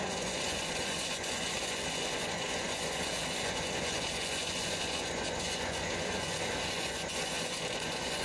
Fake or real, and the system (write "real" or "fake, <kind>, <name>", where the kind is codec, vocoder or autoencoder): fake, vocoder, Vocos